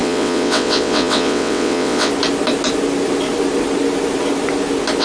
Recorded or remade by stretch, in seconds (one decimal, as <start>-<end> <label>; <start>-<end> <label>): 0.0-2.1 remade; 2.1-5.0 recorded